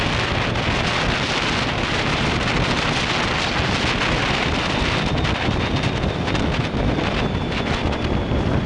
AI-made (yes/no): no